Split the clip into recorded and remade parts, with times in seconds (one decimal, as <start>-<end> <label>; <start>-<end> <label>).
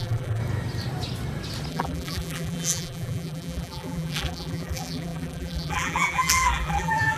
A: 0.0-0.4 remade; 0.4-1.7 recorded; 1.7-7.2 remade